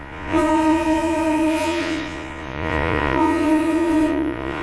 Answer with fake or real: fake